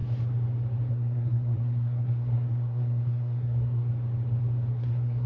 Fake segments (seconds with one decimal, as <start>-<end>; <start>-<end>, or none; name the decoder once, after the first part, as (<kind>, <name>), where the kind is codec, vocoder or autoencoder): 0.9-3.9 (codec, SNAC); 4.7-5.3